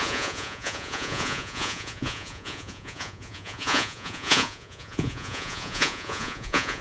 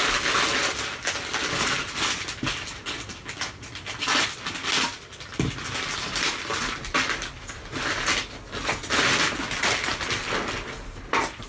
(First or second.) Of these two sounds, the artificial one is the first